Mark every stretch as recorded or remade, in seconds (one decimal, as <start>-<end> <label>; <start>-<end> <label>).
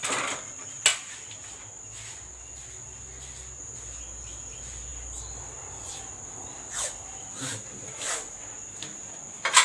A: 0.0-9.6 recorded